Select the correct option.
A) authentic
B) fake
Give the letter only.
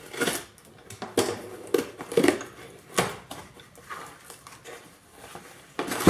A